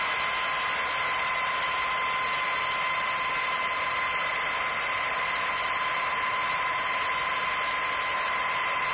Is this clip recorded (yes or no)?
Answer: yes